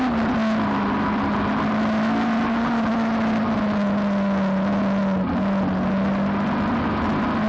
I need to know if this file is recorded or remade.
recorded